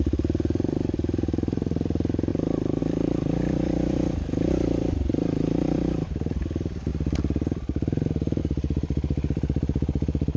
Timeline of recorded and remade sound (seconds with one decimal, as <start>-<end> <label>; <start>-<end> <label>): 0.0-2.3 remade; 2.3-2.8 recorded; 2.8-6.9 remade; 6.9-8.4 recorded; 8.4-10.4 remade